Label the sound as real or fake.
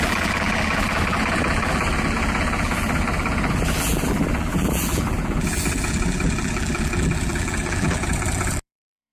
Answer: fake